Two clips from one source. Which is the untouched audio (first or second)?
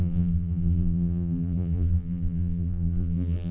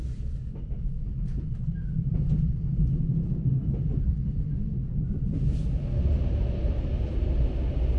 second